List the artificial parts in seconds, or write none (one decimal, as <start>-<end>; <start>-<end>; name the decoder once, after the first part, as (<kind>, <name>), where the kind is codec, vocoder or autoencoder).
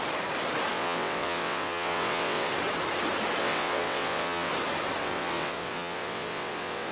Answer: 0.7-2.5 (vocoder, WaveNeXt); 3.4-4.5; 5.0-6.9